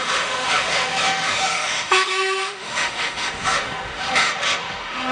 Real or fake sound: fake